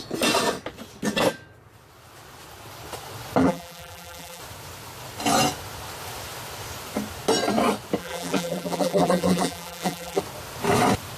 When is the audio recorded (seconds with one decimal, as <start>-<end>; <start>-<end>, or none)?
0.0-3.4; 4.4-8.0; 10.2-11.2